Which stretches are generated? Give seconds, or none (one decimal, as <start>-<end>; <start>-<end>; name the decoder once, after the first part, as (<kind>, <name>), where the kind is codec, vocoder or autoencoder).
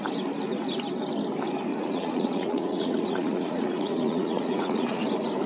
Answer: 1.7-5.0 (vocoder, Vocos)